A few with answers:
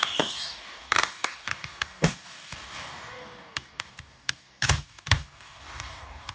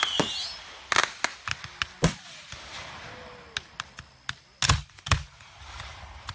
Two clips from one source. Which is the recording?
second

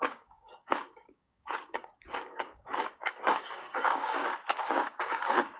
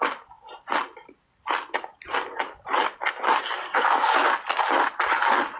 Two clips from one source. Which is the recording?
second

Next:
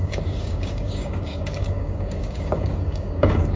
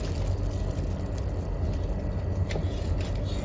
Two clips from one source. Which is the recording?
second